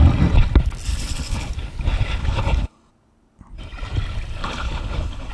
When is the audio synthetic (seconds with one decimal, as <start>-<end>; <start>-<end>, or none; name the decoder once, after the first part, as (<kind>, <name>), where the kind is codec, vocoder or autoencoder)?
0.9-1.5 (codec, HILCodec); 2.2-2.9; 4.4-5.3